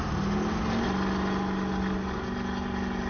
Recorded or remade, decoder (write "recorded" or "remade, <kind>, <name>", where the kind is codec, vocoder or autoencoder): recorded